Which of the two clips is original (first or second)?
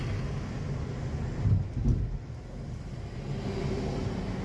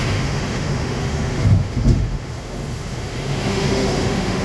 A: first